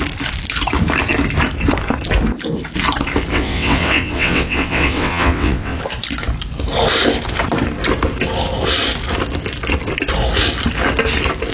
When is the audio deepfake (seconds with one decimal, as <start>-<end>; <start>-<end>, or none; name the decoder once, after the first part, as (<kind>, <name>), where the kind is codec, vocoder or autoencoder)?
3.3-5.8 (vocoder, WaveNeXt)